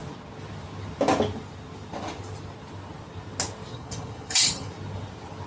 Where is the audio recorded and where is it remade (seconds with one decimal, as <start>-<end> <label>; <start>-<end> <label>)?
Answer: 0.0-3.7 recorded; 3.7-4.7 remade; 4.7-5.5 recorded